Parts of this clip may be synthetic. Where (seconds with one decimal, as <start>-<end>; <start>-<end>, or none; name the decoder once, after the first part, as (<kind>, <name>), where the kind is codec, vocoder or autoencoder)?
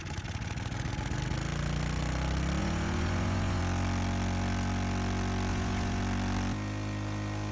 2.6-3.6 (vocoder, Vocos); 5.5-6.0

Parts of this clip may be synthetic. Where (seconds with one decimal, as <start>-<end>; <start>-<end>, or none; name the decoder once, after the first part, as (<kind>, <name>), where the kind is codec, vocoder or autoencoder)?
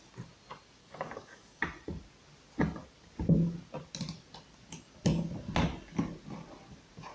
0.8-1.6 (codec, DAC)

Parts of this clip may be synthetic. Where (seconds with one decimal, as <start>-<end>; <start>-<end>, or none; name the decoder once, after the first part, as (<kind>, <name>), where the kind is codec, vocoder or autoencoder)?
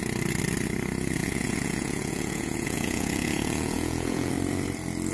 1.2-4.3 (vocoder, Vocos)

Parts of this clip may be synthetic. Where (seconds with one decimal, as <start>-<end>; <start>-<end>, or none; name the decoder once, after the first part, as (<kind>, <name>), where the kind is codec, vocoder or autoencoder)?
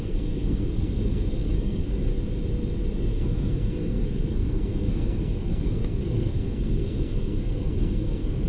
0.0-2.1 (codec, SNAC); 3.0-8.5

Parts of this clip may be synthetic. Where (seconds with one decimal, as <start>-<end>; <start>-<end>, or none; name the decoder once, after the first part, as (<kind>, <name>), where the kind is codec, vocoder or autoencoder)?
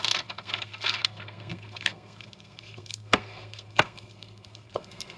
0.0-5.2 (codec, SNAC)